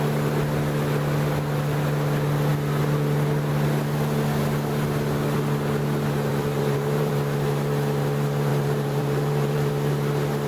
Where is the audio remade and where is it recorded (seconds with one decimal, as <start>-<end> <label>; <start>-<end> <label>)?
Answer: 0.0-6.3 recorded; 6.3-7.1 remade; 7.1-8.5 recorded; 8.5-9.7 remade; 9.7-10.5 recorded